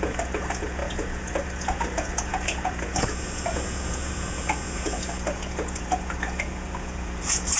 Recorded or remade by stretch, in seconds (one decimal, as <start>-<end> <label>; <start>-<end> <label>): 0.0-7.6 remade